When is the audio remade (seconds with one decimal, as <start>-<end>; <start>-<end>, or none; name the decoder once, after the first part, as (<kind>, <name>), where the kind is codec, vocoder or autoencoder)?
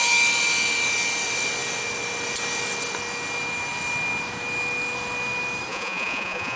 5.7-6.6 (vocoder, Vocos)